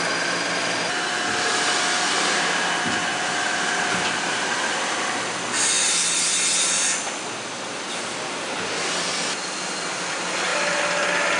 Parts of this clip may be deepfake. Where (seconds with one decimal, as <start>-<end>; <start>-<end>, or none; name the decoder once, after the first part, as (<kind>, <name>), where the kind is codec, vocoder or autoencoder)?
none